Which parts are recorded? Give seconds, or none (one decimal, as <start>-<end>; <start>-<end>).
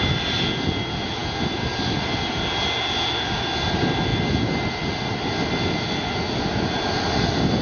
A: 0.0-7.6